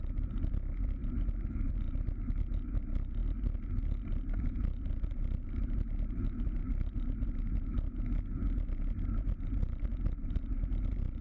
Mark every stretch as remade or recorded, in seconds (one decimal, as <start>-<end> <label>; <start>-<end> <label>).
0.0-11.2 recorded